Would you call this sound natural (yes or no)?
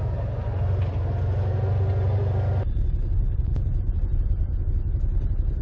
yes